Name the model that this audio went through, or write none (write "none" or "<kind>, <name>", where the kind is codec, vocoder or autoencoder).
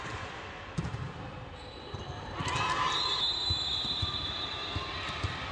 none